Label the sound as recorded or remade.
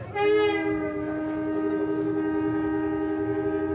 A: recorded